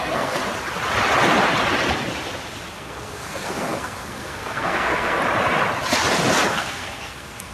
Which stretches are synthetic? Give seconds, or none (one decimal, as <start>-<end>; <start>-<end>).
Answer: 0.0-0.4; 2.7-5.2; 6.5-7.5